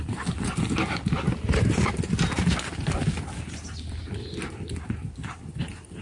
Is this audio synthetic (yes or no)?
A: no